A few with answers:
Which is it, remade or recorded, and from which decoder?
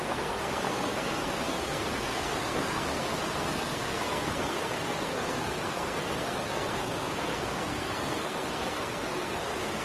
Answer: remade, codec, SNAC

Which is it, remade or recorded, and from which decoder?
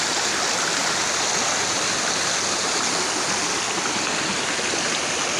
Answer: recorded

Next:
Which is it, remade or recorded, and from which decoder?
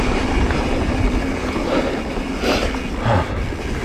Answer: recorded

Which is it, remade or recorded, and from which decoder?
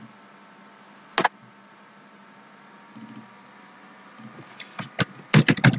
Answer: recorded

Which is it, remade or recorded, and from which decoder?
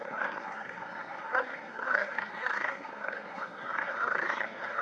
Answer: remade, codec, SNAC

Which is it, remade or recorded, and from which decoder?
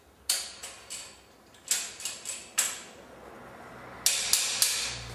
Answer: recorded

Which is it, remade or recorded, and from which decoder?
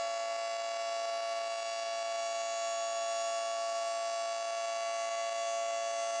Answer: recorded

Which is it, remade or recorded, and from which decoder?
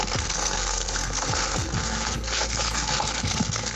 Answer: remade, codec, SNAC